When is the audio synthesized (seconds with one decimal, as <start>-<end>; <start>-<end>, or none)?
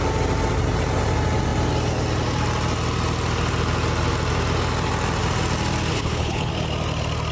5.9-6.5